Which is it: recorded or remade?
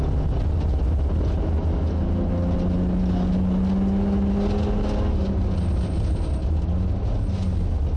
recorded